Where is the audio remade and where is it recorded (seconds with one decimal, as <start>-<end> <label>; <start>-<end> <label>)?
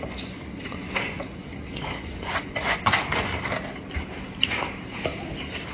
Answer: 0.0-3.3 remade; 3.3-5.7 recorded